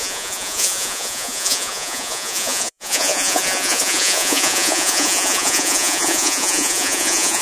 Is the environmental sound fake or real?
fake